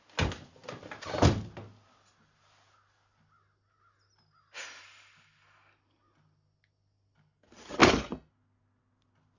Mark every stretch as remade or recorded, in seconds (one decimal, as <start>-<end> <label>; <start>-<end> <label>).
0.0-9.4 recorded